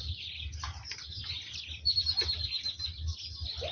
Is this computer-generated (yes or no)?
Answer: no